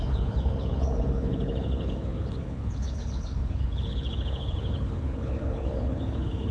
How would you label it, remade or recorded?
remade